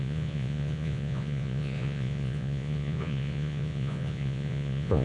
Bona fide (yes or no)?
no